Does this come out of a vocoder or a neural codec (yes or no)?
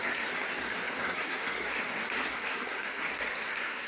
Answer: yes